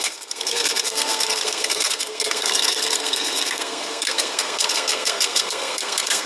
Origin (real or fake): fake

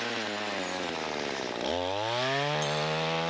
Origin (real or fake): real